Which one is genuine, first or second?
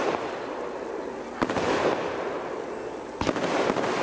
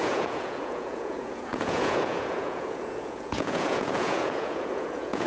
first